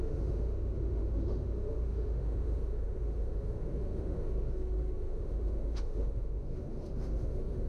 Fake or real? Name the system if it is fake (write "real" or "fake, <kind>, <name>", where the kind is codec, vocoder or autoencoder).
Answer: fake, autoencoder, DAC-VAE